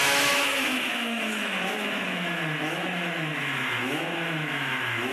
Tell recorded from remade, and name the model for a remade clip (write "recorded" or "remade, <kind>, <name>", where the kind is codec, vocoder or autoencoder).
remade, autoencoder, DAC-VAE